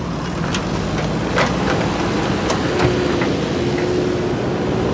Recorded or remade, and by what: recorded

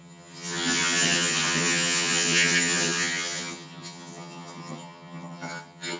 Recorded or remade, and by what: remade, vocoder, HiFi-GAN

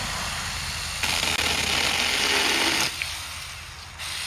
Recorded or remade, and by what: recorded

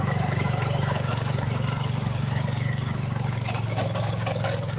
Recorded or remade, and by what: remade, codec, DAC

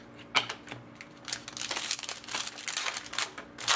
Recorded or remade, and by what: recorded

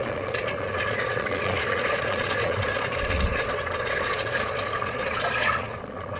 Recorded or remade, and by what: remade, vocoder, Vocos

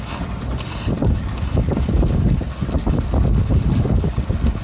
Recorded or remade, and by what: recorded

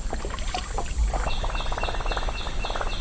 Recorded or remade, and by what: recorded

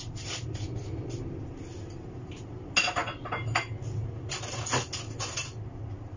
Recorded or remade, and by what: recorded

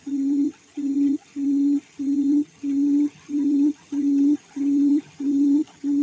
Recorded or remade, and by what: remade, vocoder, HiFi-GAN